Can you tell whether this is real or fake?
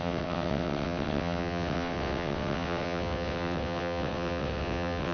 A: fake